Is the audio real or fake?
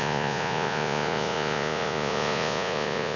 fake